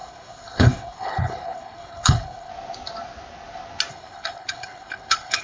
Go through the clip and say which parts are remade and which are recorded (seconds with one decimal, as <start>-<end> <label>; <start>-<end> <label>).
0.0-2.5 remade; 2.5-3.9 recorded; 3.9-5.4 remade